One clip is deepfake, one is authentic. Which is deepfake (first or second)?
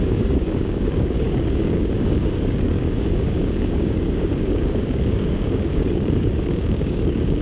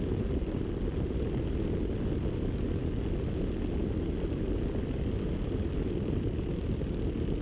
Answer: first